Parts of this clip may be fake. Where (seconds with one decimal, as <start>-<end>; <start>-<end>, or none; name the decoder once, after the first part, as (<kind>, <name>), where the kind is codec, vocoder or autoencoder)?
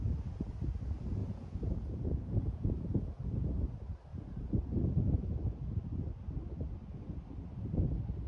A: 1.2-3.5 (vocoder, Vocos); 4.1-4.6